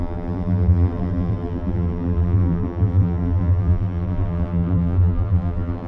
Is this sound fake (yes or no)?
yes